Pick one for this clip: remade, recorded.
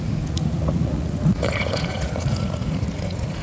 remade